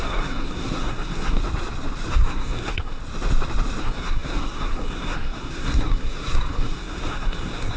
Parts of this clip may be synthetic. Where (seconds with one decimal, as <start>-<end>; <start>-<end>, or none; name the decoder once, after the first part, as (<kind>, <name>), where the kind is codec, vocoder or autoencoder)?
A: 0.0-1.4 (codec, SNAC); 2.1-3.0; 3.8-7.8